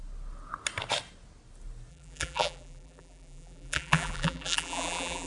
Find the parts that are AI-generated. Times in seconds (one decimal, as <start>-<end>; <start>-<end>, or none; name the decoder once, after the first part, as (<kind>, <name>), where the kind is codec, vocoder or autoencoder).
1.9-5.3 (vocoder, BigVGAN v2)